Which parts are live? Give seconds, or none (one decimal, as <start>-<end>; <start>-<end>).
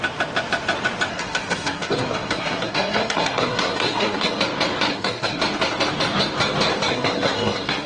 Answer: 0.0-1.1; 4.4-4.9; 5.4-6.9